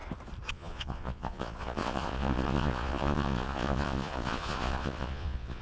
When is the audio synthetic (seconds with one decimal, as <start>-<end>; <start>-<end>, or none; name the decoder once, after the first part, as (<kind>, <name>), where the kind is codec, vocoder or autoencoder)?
0.5-5.6 (vocoder, Vocos)